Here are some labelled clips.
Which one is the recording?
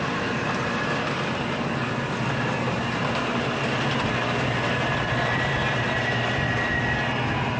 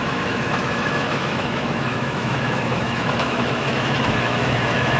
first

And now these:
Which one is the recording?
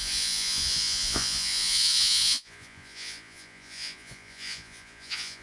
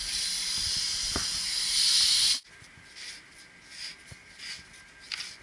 second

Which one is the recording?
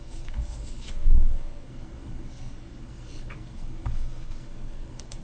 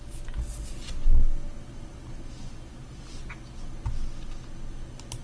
second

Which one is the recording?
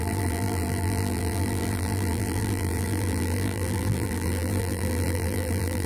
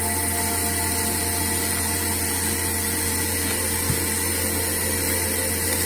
second